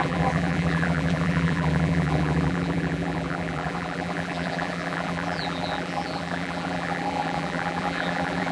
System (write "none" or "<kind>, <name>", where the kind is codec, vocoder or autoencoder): vocoder, BigVGAN v2